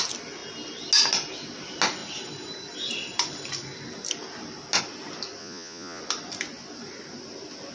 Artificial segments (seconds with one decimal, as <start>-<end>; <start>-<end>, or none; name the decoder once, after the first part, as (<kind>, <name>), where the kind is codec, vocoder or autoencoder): 5.4-6.0 (vocoder, Vocos)

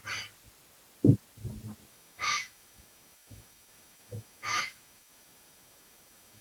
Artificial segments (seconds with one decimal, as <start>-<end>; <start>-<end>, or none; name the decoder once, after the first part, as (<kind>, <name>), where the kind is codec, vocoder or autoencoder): 1.9-6.4 (autoencoder, DAC-VAE)

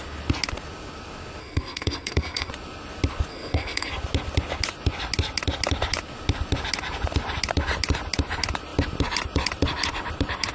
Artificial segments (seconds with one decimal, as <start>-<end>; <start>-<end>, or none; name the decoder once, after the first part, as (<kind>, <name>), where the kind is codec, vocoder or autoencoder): 1.4-2.5 (codec, SNAC); 3.3-3.9

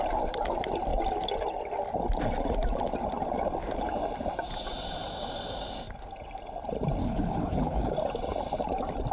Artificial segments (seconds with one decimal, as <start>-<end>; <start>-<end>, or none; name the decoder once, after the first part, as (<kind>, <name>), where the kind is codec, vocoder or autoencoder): 7.0-7.9 (codec, HILCodec)

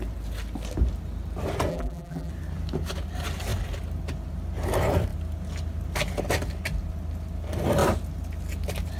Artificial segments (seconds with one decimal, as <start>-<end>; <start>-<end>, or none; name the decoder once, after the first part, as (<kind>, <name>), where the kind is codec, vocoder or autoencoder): 1.7-2.3 (vocoder, BigVGAN v2)